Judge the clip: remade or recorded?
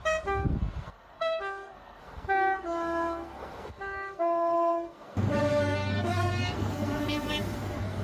remade